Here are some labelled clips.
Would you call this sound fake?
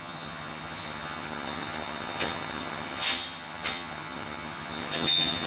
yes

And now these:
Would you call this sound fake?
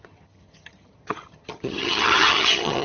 yes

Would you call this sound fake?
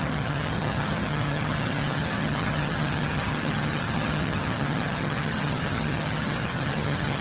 yes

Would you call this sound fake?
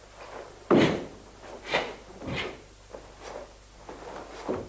no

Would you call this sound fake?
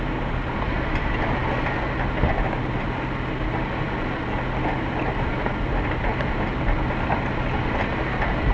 no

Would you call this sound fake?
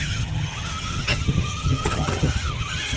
yes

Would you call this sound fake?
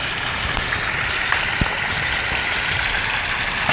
no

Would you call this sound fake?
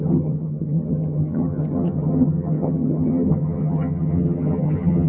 yes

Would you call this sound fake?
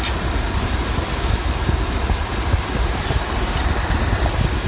no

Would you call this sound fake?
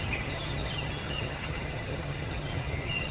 yes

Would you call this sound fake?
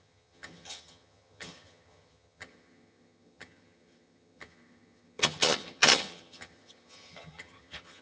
yes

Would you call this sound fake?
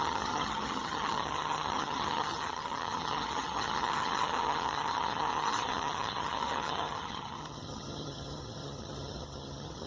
yes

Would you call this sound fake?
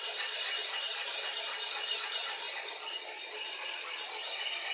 no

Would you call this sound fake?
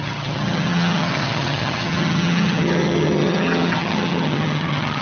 yes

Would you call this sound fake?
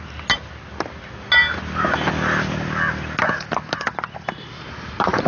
no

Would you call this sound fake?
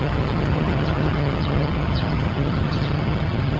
yes